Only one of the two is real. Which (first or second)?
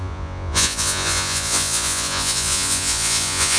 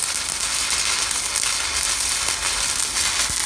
second